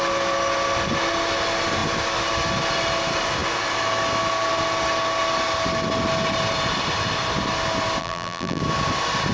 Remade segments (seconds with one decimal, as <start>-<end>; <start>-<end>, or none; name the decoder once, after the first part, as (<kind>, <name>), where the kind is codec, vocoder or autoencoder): 8.0-8.6 (vocoder, BigVGAN v2)